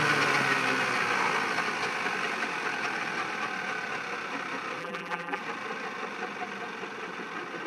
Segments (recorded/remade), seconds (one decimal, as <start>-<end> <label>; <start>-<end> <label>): 0.0-4.8 recorded; 4.8-5.4 remade; 5.4-7.7 recorded